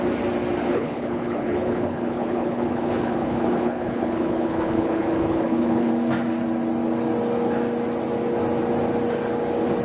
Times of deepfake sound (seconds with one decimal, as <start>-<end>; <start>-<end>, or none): 0.7-5.9